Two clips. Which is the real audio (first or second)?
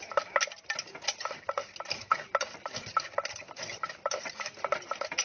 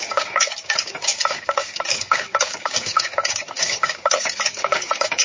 first